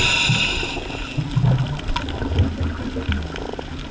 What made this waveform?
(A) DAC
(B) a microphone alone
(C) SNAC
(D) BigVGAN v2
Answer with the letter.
B